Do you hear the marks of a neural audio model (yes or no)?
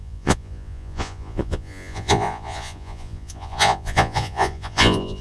yes